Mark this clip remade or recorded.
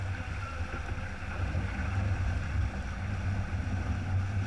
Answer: recorded